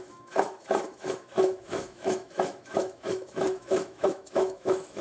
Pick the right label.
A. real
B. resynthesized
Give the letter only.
B